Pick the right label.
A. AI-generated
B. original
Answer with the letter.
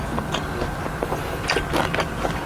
B